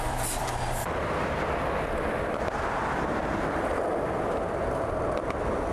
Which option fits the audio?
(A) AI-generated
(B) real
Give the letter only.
A